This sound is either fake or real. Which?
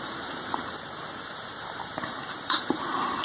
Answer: fake